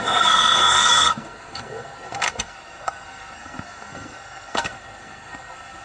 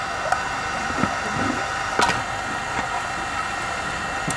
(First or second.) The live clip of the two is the second